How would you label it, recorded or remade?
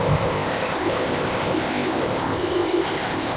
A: remade